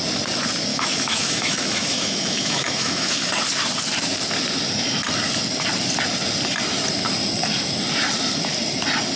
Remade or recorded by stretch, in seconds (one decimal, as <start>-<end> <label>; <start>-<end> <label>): 0.0-0.7 recorded; 0.7-3.3 remade; 3.3-9.2 recorded